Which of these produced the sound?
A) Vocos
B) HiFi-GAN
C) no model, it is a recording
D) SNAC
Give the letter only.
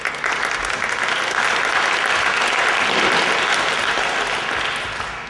C